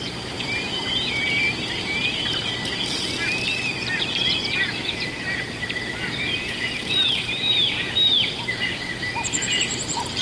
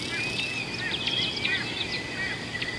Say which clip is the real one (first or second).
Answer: second